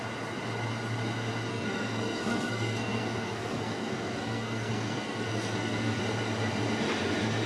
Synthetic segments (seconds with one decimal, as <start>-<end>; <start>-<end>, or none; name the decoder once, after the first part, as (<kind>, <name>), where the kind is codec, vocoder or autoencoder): 1.5-6.0 (codec, SNAC)